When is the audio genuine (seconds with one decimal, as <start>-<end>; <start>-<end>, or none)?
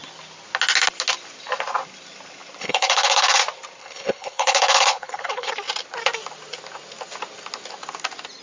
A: 0.0-2.6; 3.4-3.8; 5.5-8.4